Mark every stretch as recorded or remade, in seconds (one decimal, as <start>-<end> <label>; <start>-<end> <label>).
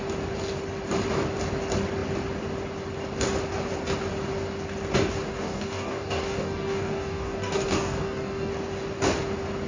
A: 0.0-5.3 recorded; 5.3-8.5 remade; 8.5-9.7 recorded